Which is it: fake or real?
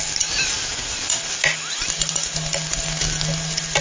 real